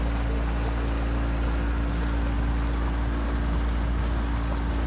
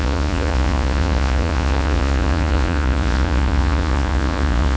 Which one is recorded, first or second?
first